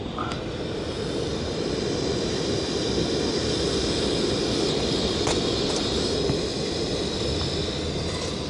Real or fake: real